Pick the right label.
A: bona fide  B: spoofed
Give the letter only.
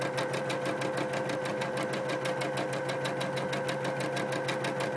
A